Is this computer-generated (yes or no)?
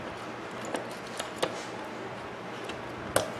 no